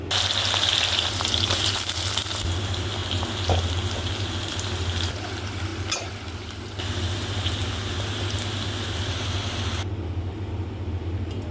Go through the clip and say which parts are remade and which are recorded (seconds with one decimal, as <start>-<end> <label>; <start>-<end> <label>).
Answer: 0.0-11.5 recorded